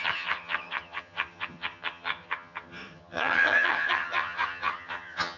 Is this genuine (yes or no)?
no